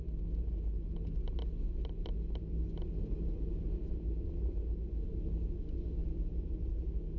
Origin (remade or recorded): recorded